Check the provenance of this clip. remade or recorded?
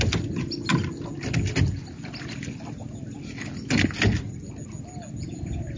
recorded